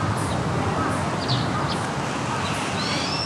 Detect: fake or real real